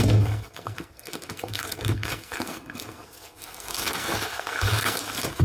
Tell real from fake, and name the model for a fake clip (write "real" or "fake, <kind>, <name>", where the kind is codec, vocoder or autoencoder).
fake, codec, SNAC